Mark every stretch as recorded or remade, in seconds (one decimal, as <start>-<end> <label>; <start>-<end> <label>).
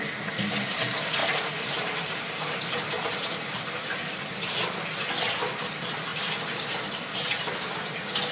0.0-1.2 recorded; 1.2-2.7 remade; 2.7-6.1 recorded; 6.1-6.9 remade; 6.9-8.3 recorded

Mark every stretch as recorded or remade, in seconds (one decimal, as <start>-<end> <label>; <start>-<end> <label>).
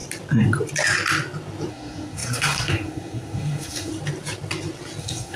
0.0-1.7 recorded; 1.7-3.9 remade; 3.9-5.0 recorded; 5.0-5.4 remade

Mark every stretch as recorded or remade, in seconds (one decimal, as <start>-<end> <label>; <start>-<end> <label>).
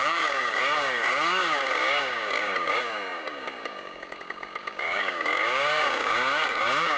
0.0-7.0 remade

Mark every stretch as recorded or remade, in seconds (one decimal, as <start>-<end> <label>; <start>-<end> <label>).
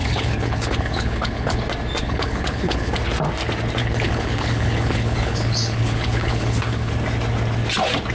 0.0-1.6 remade; 1.6-2.0 recorded; 2.0-2.9 remade; 2.9-3.8 recorded; 3.8-6.9 remade; 6.9-8.1 recorded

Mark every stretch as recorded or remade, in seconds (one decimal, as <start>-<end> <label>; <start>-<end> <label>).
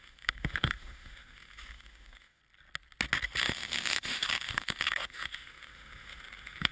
0.0-2.4 remade; 2.4-3.4 recorded; 3.4-6.7 remade